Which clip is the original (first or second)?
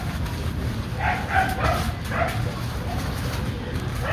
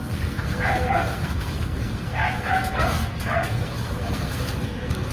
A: first